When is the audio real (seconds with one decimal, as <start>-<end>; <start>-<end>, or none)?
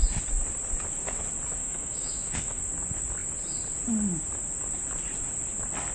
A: 0.0-1.6; 2.6-5.9